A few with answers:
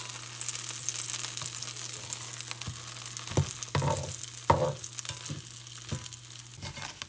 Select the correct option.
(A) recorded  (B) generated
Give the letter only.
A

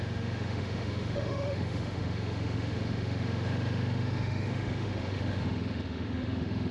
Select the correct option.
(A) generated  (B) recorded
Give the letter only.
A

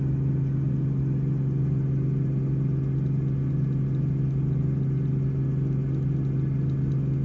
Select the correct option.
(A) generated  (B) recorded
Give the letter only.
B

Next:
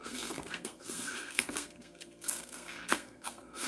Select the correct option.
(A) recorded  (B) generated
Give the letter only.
B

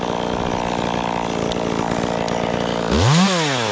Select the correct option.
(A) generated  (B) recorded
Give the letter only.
B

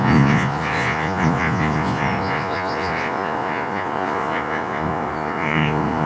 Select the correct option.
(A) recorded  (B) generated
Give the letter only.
B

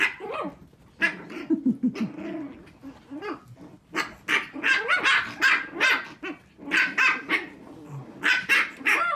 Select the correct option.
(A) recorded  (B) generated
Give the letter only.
A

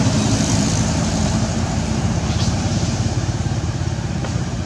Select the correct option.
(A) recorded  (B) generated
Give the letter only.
B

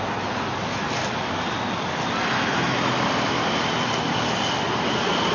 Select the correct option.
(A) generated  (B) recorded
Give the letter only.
B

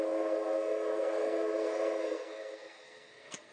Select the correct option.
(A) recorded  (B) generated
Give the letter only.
B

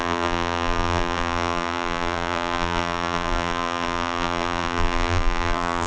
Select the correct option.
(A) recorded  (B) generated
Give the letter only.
B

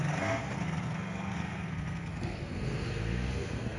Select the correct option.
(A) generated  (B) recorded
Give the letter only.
A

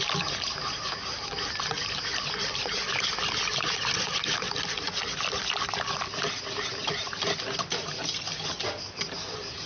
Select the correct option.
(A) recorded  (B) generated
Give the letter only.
A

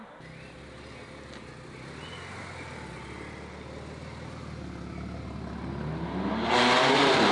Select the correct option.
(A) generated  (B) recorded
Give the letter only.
B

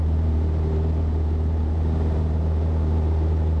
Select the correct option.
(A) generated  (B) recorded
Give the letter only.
A